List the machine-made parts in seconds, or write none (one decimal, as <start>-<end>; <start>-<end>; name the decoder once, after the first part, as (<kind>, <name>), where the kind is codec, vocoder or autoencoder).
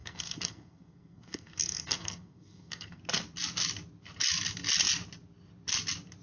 0.0-3.0 (codec, SNAC)